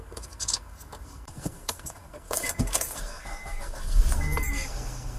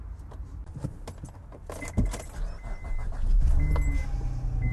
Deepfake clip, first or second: first